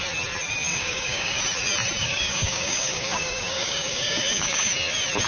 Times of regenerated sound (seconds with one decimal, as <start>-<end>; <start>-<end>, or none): 0.7-1.4; 2.0-4.7